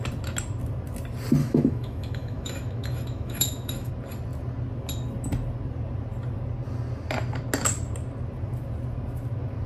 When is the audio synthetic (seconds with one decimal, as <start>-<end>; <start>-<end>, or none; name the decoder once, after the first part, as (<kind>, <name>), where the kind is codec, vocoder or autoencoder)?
1.4-3.9 (autoencoder, DAC-VAE)